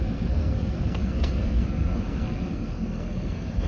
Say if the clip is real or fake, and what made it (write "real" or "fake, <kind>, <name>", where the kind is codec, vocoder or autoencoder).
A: fake, codec, SNAC